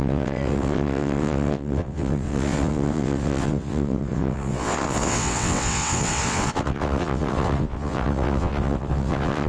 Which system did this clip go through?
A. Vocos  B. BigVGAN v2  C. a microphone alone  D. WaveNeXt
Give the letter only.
D